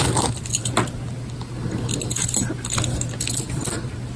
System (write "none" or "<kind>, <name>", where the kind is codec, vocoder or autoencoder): none